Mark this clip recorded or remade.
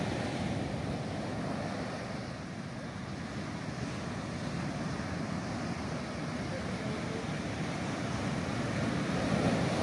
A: recorded